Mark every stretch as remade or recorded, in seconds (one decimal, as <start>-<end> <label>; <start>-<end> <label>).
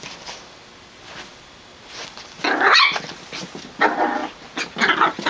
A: 0.0-5.3 recorded